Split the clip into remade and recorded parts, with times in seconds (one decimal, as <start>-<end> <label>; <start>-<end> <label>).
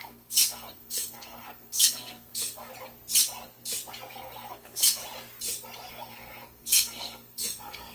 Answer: 0.0-2.7 remade; 2.7-4.1 recorded; 4.1-5.0 remade; 5.0-5.9 recorded; 5.9-7.9 remade